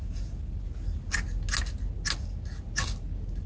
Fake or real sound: real